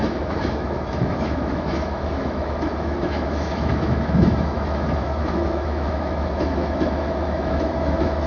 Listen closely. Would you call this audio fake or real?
fake